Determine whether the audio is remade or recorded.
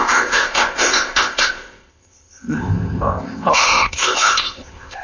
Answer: remade